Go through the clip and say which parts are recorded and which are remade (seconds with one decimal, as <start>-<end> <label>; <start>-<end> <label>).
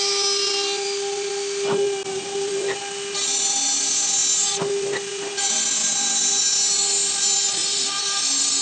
0.0-2.1 recorded; 2.1-2.8 remade; 2.8-7.6 recorded; 7.6-8.2 remade; 8.2-8.6 recorded